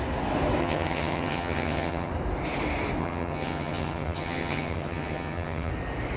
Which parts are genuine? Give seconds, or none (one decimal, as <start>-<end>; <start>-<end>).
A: 0.0-0.6; 2.1-3.0; 5.7-6.2